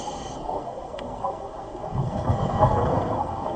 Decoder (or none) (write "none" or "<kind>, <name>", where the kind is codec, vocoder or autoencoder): codec, SNAC